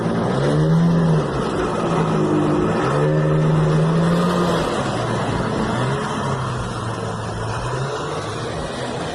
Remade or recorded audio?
recorded